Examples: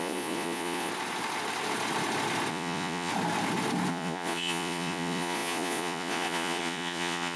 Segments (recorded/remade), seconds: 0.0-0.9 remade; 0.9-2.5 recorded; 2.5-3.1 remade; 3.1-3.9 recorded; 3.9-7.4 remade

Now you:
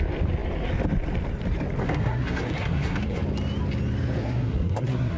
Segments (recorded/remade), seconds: 0.0-1.8 recorded; 1.8-3.2 remade; 3.2-4.2 recorded; 4.2-5.2 remade